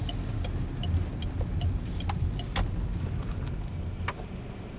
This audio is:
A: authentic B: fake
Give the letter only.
A